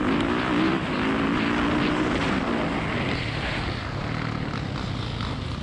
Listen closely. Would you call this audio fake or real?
real